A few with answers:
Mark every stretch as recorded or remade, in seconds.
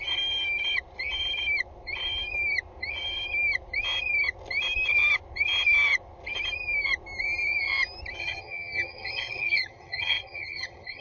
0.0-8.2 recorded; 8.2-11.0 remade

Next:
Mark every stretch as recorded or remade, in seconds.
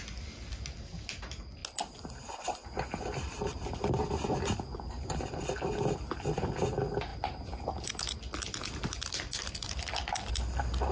0.0-10.9 recorded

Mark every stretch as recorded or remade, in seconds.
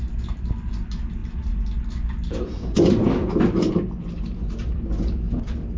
0.0-5.8 recorded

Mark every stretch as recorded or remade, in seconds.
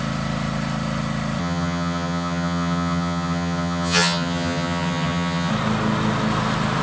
0.0-1.4 recorded; 1.4-5.5 remade; 5.5-6.8 recorded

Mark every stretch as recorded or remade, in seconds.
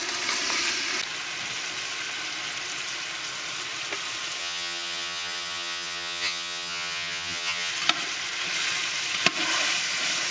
0.0-4.4 recorded; 4.4-7.7 remade; 7.7-10.3 recorded